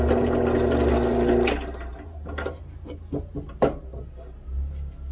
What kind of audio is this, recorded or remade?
recorded